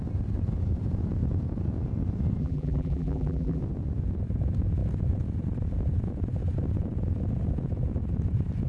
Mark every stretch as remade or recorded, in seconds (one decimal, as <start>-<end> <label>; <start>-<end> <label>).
0.0-2.4 recorded; 2.4-3.6 remade; 3.6-8.7 recorded

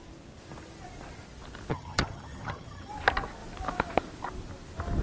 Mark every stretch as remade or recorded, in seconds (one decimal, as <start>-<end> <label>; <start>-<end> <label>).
0.0-1.7 recorded; 1.7-2.9 remade; 2.9-5.0 recorded

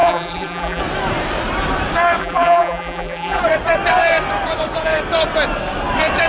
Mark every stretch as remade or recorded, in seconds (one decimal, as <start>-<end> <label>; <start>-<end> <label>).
0.0-0.8 remade; 0.8-2.2 recorded; 2.2-3.4 remade; 3.4-6.3 recorded

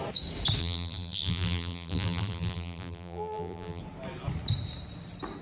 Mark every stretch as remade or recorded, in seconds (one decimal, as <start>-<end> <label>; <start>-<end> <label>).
0.0-0.6 recorded; 0.6-3.8 remade; 3.8-5.4 recorded

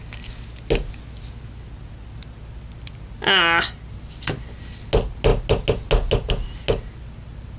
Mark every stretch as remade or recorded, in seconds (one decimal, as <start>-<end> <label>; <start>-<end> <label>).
0.0-7.6 recorded

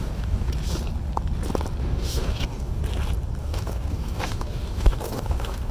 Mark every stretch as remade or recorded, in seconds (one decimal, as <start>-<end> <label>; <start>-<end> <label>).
0.0-0.5 remade; 0.5-1.8 recorded; 1.8-2.8 remade; 2.8-3.4 recorded; 3.4-5.7 remade

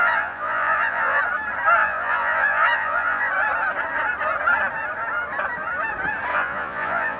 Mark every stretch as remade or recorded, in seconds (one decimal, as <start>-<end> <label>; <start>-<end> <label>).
0.0-1.2 remade; 1.2-1.8 recorded; 1.8-3.3 remade; 3.3-6.3 recorded; 6.3-7.2 remade

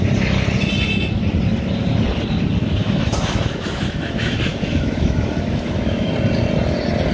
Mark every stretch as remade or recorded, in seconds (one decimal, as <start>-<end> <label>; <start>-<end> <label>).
0.0-2.8 recorded; 2.8-6.1 remade; 6.1-7.1 recorded